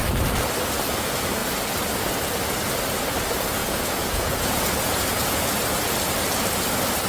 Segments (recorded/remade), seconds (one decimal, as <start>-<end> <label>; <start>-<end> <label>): 0.0-3.6 recorded; 3.6-5.5 remade; 5.5-7.1 recorded